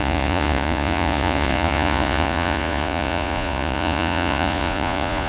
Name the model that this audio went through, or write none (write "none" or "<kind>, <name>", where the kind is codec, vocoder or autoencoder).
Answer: vocoder, Vocos